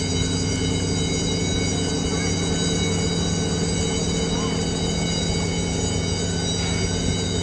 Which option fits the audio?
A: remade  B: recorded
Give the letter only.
B